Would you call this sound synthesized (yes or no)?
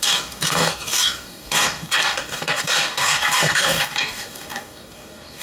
yes